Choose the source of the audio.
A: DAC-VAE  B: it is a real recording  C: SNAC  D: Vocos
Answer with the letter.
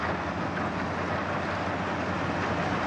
B